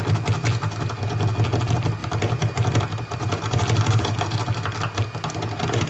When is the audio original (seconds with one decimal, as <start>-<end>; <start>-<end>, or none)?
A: 0.0-5.9